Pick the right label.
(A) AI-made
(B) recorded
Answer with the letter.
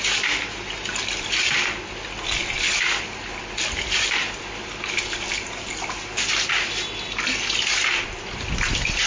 B